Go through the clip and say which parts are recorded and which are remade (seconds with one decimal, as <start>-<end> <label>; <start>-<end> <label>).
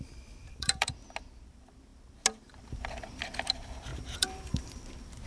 0.0-0.4 recorded; 0.4-0.9 remade; 0.9-3.9 recorded; 3.9-4.8 remade; 4.8-5.3 recorded